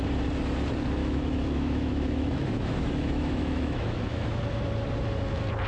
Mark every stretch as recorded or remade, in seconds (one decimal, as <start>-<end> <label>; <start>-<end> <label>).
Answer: 0.0-1.0 recorded; 1.0-4.4 remade; 4.4-5.7 recorded